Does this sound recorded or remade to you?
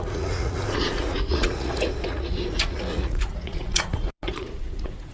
remade